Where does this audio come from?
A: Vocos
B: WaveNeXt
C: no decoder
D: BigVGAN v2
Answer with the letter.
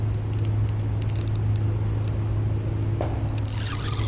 C